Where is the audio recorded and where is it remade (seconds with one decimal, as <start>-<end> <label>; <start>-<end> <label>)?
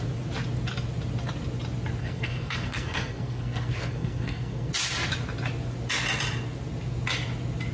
0.0-2.0 recorded; 2.0-4.7 remade; 4.7-7.7 recorded